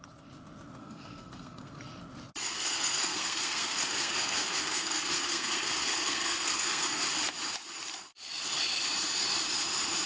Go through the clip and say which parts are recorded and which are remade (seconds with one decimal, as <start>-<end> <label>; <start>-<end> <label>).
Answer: 0.0-0.8 recorded; 0.8-1.8 remade; 1.8-2.4 recorded; 2.4-7.0 remade; 7.0-10.1 recorded

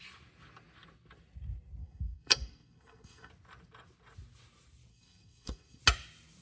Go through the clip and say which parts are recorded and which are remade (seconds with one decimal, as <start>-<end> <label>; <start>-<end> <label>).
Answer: 0.0-1.8 recorded; 1.8-3.3 remade; 3.3-4.9 recorded; 4.9-5.8 remade; 5.8-6.4 recorded

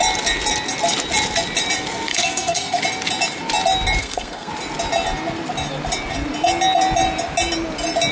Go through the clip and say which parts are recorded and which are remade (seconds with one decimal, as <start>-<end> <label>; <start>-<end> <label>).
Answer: 0.0-2.1 recorded; 2.1-2.8 remade; 2.8-4.0 recorded; 4.0-4.5 remade; 4.5-8.1 recorded

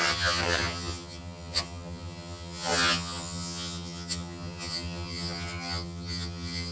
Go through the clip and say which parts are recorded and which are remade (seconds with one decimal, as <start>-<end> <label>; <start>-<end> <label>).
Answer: 0.0-6.7 remade

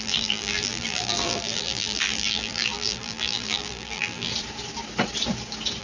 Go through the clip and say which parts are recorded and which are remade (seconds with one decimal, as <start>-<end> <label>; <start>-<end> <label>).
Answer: 0.0-4.3 remade; 4.3-5.8 recorded

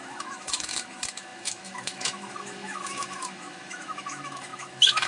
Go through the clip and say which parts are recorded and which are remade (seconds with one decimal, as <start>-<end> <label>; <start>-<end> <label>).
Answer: 0.0-5.1 remade

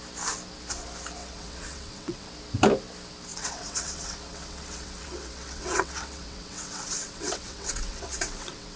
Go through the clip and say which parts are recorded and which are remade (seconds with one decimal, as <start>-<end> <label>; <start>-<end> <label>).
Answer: 0.0-1.2 recorded; 1.2-2.3 remade; 2.3-3.3 recorded; 3.3-8.8 remade

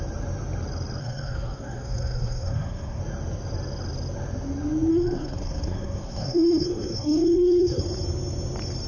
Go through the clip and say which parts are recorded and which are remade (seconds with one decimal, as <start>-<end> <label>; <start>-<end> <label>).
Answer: 0.0-1.0 recorded; 1.0-3.0 remade; 3.0-4.9 recorded; 4.9-7.8 remade; 7.8-8.9 recorded